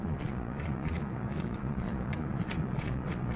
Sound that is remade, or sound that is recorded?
remade